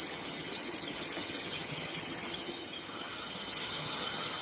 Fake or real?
fake